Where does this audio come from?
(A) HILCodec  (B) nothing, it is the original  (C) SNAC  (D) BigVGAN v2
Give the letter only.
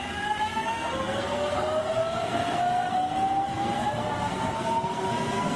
C